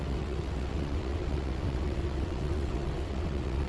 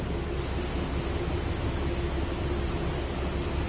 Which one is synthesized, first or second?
first